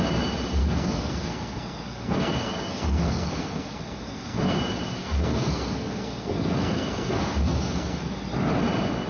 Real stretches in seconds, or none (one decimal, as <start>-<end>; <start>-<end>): 0.0-0.6; 4.6-5.0; 8.1-9.1